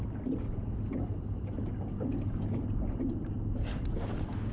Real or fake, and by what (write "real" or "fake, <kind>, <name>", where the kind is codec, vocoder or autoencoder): real